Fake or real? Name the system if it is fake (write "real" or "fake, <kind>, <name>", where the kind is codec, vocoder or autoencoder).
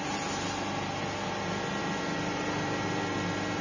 real